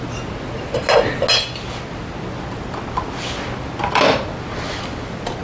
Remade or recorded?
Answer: recorded